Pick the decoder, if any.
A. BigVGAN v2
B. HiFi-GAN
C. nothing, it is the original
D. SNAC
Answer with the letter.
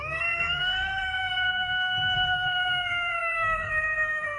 D